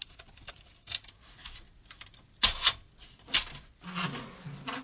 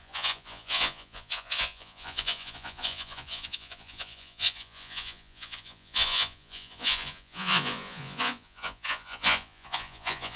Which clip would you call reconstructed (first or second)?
second